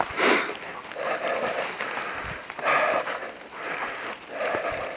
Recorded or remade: recorded